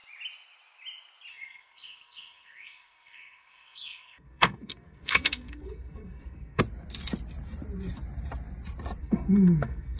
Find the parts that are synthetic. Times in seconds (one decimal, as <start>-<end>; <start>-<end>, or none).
1.3-6.6; 9.0-10.0